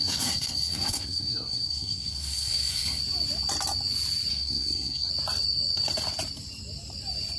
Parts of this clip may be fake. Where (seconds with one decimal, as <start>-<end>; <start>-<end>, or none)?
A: 0.0-3.0; 4.3-5.1

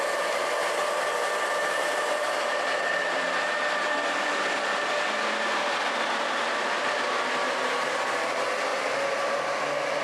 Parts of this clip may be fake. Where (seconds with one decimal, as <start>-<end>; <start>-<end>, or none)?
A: none

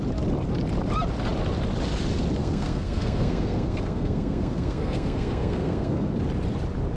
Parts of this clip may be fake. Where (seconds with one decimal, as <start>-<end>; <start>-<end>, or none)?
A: 2.4-6.1

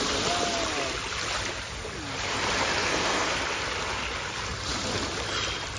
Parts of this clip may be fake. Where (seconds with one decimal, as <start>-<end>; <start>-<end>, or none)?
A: 2.8-3.4